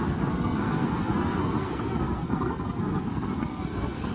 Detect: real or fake fake